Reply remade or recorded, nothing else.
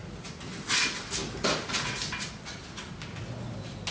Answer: recorded